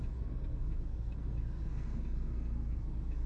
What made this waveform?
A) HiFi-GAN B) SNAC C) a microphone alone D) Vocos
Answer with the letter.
B